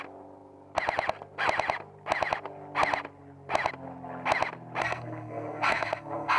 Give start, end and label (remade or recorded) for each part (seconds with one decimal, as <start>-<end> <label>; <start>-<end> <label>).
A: 0.0-4.8 recorded; 4.8-6.4 remade